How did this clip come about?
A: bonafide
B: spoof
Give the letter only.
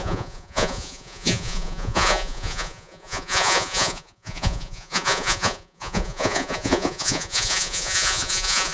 B